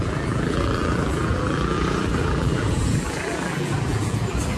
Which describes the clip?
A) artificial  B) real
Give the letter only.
A